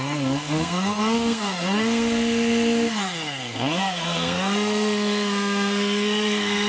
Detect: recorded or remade remade